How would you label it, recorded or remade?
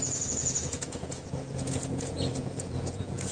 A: remade